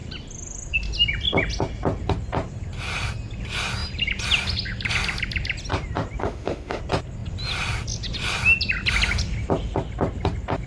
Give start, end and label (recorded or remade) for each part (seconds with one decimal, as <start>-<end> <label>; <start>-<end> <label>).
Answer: 0.0-6.2 recorded; 6.2-6.8 remade; 6.8-10.7 recorded